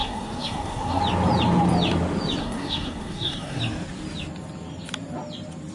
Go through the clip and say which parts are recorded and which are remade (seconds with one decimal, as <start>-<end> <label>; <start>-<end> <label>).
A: 0.0-1.0 remade; 1.0-2.4 recorded; 2.4-3.6 remade; 3.6-5.7 recorded